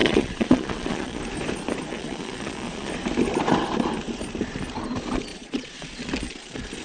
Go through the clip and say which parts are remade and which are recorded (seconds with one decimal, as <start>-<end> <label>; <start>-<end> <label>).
0.0-1.2 remade; 1.2-1.9 recorded; 1.9-2.9 remade; 2.9-5.3 recorded; 5.3-6.0 remade; 6.0-6.8 recorded